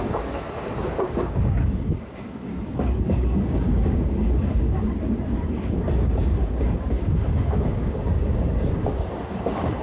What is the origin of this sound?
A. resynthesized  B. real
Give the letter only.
A